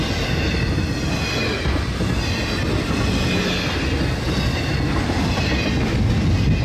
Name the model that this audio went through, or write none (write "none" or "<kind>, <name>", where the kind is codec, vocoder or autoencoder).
none